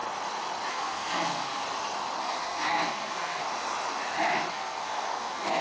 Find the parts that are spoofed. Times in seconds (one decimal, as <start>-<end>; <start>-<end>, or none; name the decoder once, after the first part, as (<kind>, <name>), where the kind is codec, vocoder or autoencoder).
0.7-1.6 (codec, SNAC); 2.2-3.4; 4.5-5.6